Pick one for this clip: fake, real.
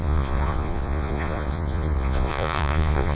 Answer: fake